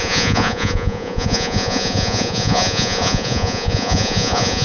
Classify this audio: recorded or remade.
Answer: remade